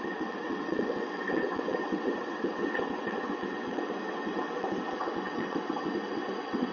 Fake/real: fake